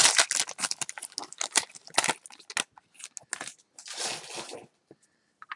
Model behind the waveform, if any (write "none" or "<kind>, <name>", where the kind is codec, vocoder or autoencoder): none